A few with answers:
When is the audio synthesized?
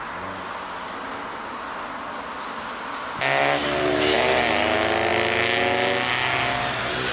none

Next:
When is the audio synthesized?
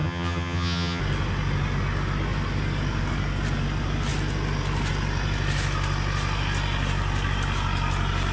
0.0-1.0 (vocoder, HiFi-GAN)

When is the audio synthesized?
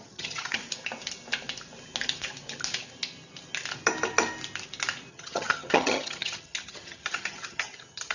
0.0-0.6 (vocoder, HiFi-GAN); 5.1-8.1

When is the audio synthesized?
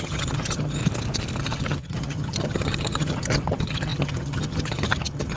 0.0-0.8 (vocoder, HiFi-GAN); 1.4-5.4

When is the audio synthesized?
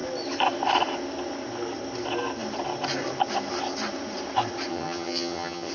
4.7-5.7 (vocoder, HiFi-GAN)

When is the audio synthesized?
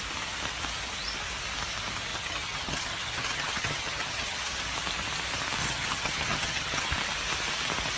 2.1-4.6 (vocoder, HiFi-GAN); 5.6-6.9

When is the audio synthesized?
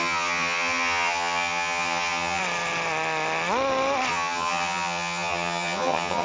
0.0-2.4 (vocoder, HiFi-GAN); 4.1-6.2